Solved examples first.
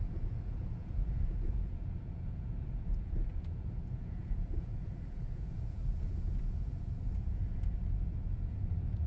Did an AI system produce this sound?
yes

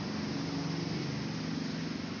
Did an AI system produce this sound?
no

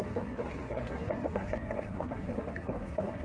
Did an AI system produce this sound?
yes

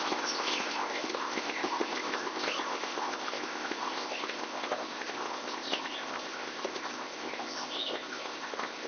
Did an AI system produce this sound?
yes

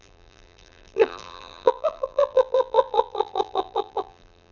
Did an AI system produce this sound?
yes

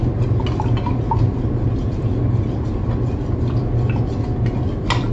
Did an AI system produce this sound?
no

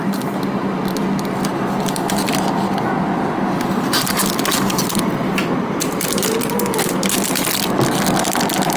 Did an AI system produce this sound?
no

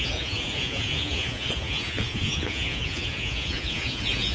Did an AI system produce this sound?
yes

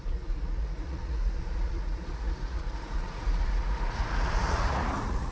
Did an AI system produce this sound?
yes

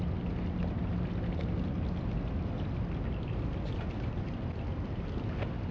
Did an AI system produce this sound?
no